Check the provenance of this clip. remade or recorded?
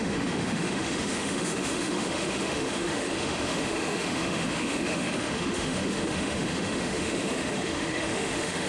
remade